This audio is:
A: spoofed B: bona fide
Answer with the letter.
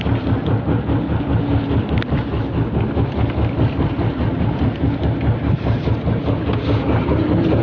B